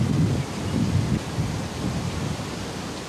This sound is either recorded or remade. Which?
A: recorded